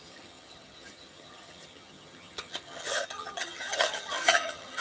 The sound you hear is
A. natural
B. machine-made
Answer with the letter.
B